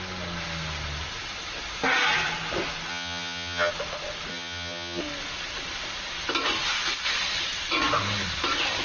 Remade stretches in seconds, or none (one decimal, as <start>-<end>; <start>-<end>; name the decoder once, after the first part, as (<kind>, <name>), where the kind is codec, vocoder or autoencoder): 2.9-3.7 (vocoder, HiFi-GAN); 4.3-5.0